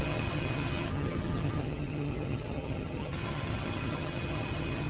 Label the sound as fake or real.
fake